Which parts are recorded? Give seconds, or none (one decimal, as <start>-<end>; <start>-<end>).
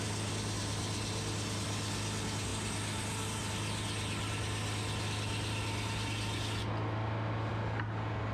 0.0-8.3